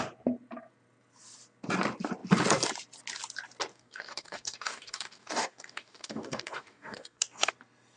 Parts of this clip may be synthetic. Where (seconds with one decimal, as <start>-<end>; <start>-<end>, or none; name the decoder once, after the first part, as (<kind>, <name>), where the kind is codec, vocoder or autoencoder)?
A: 3.7-7.5 (codec, DAC)